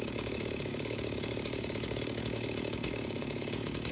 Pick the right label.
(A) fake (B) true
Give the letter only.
A